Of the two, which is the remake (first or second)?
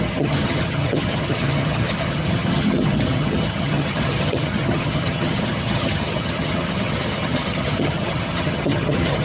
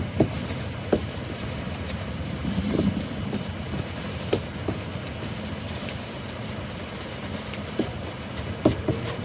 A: first